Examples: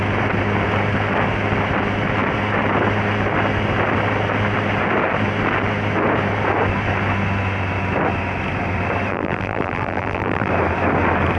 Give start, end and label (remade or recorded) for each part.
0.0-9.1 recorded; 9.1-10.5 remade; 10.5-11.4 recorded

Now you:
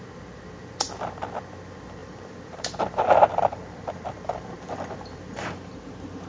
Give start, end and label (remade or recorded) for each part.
0.0-2.0 recorded; 2.0-5.8 remade; 5.8-6.3 recorded